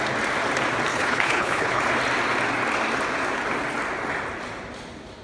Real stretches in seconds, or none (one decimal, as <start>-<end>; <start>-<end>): 0.0-0.9; 1.8-5.2